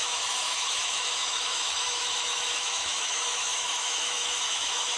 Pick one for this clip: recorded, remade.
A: remade